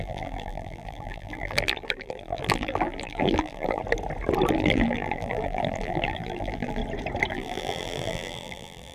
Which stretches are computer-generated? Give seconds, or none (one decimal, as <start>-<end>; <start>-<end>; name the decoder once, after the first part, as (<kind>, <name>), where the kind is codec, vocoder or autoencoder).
0.0-3.8 (vocoder, BigVGAN v2); 4.5-6.8; 7.3-8.9